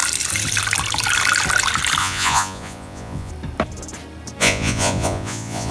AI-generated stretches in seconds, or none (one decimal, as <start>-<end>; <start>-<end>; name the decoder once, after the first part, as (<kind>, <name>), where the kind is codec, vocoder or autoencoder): 2.0-3.3 (vocoder, Vocos); 4.4-5.7